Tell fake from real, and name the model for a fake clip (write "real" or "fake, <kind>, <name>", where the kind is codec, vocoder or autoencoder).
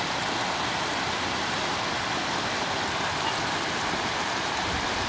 real